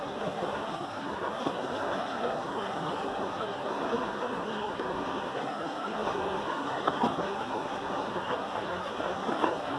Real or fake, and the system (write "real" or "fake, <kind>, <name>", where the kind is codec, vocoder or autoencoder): fake, codec, SNAC